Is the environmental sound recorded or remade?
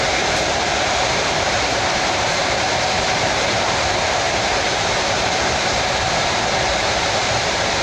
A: remade